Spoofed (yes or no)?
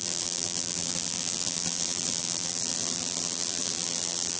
yes